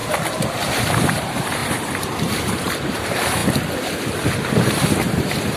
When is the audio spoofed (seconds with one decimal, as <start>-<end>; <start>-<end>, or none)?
0.8-3.4; 4.5-5.6